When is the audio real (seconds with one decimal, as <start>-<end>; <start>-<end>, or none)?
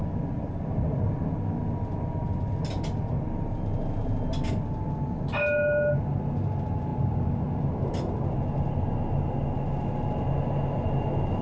0.0-11.4